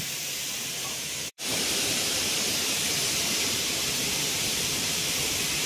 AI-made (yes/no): yes